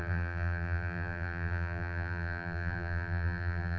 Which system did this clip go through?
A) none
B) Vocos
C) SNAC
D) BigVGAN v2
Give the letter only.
D